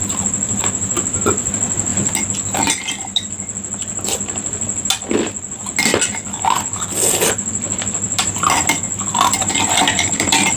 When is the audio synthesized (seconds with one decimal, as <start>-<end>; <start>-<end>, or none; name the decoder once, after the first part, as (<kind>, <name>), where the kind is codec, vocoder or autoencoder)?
none